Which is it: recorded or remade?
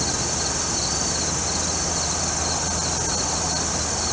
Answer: recorded